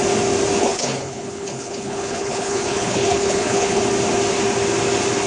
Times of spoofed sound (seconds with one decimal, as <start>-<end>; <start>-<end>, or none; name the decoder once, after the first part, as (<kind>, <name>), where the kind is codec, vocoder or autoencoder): 0.6-3.8 (codec, HILCodec)

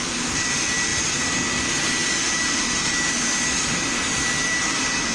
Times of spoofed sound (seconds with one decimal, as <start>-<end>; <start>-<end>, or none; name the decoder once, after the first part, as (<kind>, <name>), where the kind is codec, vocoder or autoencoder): none

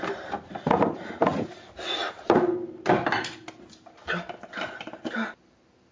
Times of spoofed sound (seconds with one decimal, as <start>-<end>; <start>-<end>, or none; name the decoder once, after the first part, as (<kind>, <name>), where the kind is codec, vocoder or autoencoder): none